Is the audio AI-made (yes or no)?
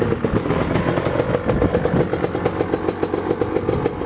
no